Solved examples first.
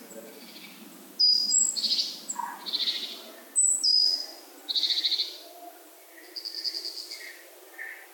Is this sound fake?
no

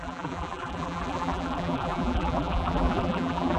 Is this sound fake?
yes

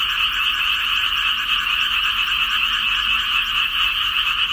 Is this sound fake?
no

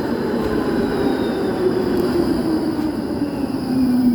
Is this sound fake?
yes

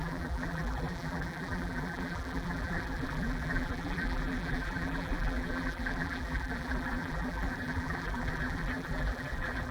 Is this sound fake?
yes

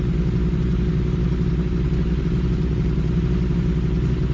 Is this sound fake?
no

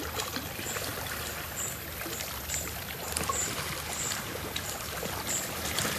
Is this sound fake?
yes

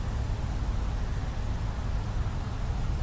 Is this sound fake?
no